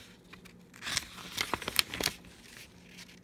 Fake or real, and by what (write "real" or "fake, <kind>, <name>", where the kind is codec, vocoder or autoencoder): real